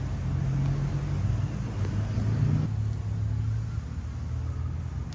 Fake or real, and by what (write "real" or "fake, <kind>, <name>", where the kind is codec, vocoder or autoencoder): real